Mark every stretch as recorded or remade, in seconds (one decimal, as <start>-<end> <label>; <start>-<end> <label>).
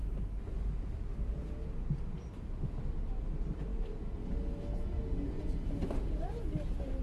0.0-7.0 recorded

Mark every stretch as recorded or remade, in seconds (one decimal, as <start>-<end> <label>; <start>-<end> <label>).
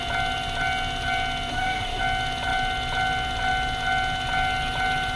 0.0-1.5 recorded; 1.5-2.0 remade; 2.0-5.2 recorded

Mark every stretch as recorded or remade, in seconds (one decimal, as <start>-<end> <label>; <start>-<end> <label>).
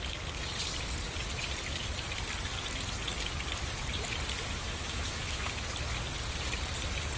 0.0-4.5 recorded; 4.5-5.6 remade; 5.6-7.2 recorded